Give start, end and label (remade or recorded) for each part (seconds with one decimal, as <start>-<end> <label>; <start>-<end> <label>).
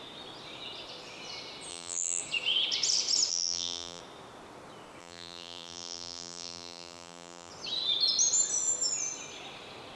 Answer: 0.0-1.7 recorded; 1.7-2.2 remade; 2.2-3.3 recorded; 3.3-4.0 remade; 4.0-5.0 recorded; 5.0-7.5 remade; 7.5-10.0 recorded